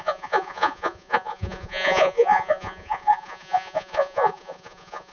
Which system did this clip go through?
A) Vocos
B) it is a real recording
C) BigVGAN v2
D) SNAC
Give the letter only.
A